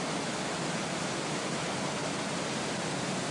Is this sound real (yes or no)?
yes